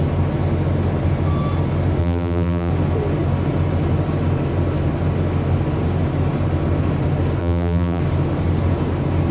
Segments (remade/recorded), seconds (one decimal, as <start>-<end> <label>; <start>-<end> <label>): 0.0-2.0 recorded; 2.0-2.7 remade; 2.7-7.4 recorded; 7.4-8.0 remade; 8.0-9.3 recorded